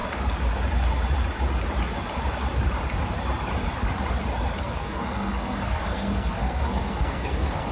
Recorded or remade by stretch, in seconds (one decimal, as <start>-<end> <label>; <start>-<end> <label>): 0.0-4.6 recorded; 4.6-7.7 remade